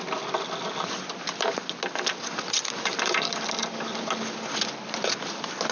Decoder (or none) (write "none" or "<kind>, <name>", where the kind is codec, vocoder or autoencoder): none